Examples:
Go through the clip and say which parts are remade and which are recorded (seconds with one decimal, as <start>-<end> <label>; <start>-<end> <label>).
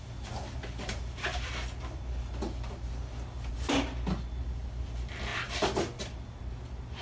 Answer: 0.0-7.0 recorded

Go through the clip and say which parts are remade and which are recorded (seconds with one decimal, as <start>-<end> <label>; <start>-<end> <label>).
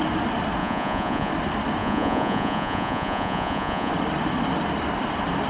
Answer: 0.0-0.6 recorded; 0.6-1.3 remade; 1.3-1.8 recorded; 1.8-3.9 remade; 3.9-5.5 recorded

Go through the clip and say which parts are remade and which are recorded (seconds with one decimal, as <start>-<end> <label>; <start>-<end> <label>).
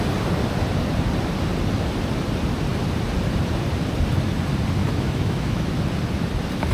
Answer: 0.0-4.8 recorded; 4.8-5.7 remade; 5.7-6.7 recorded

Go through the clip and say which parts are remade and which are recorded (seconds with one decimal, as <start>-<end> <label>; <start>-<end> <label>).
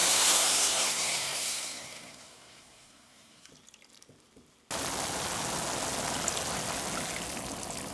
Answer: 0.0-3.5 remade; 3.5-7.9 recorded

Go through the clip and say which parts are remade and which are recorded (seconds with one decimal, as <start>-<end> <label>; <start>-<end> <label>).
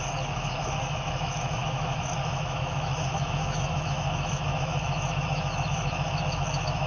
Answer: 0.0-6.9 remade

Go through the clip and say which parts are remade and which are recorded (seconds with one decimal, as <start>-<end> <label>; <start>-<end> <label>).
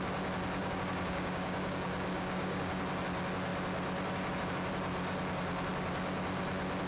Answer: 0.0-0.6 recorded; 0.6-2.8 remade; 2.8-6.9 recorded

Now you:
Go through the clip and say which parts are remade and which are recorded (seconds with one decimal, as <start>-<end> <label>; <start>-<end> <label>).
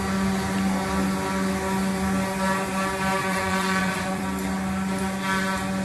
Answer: 0.0-3.2 recorded; 3.2-4.2 remade; 4.2-5.8 recorded